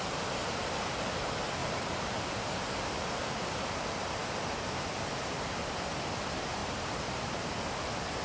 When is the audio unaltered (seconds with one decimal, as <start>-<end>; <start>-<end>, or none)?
0.0-0.4; 1.2-1.6; 3.3-6.6; 7.2-8.2